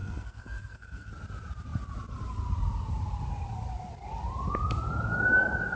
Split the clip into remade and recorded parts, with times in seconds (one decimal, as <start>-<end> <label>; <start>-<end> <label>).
0.0-1.1 remade; 1.1-5.8 recorded